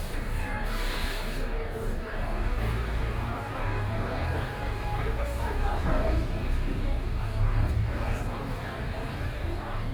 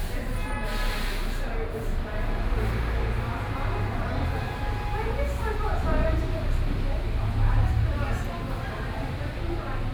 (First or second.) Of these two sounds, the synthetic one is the first